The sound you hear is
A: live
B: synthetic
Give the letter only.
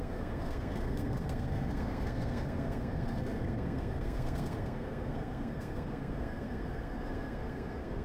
B